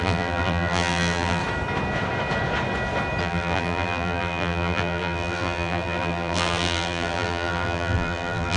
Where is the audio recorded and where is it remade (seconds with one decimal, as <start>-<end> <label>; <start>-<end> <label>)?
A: 0.0-1.4 remade; 1.4-3.2 recorded; 3.2-8.6 remade